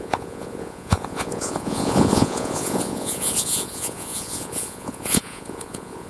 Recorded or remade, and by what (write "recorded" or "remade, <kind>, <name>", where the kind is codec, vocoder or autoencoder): remade, vocoder, Vocos